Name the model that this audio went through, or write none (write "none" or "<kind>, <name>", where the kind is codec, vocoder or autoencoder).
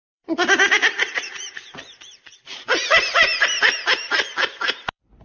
vocoder, BigVGAN v2